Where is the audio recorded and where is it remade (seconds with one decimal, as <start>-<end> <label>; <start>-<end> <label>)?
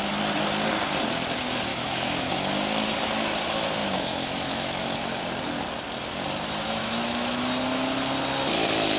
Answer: 0.0-1.7 recorded; 1.7-2.3 remade; 2.3-3.8 recorded; 3.8-5.2 remade; 5.2-6.8 recorded; 6.8-7.4 remade; 7.4-9.0 recorded